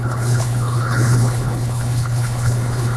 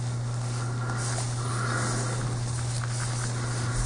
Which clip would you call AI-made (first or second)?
first